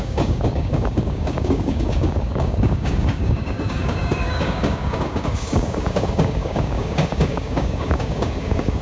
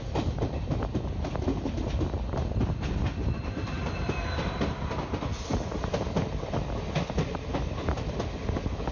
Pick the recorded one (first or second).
second